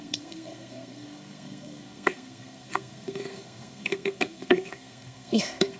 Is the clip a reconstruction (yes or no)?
yes